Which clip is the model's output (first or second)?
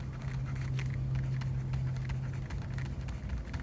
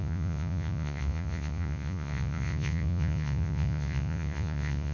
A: second